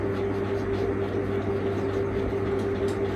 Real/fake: real